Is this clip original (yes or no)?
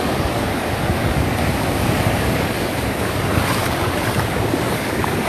no